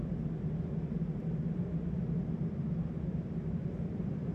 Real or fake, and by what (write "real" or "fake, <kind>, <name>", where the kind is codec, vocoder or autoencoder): real